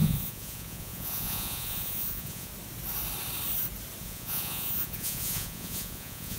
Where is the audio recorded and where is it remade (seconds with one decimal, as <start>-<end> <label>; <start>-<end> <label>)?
0.0-2.5 remade; 2.5-4.0 recorded; 4.0-6.4 remade